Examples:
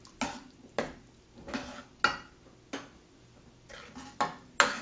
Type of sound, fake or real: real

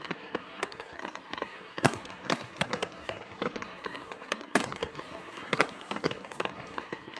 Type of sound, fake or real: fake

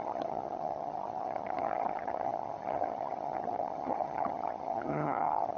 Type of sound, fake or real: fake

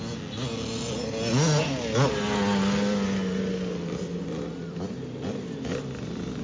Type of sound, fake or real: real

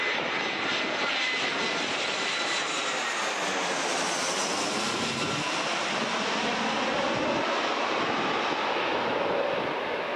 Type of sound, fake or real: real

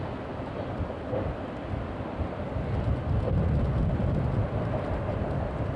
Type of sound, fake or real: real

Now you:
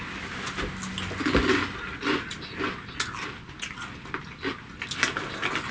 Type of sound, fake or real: real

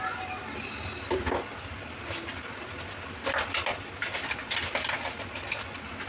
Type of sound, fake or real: real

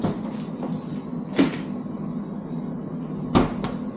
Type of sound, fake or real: real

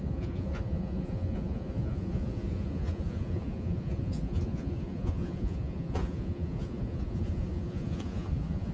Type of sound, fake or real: fake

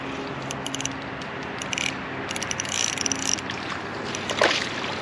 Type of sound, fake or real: real